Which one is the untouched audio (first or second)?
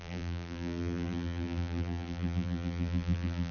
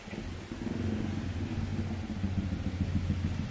second